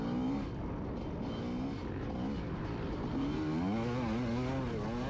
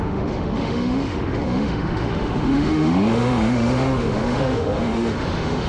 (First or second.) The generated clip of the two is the second